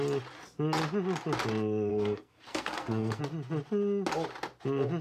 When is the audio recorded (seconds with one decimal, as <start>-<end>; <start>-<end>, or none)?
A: 0.0-1.9; 3.2-5.0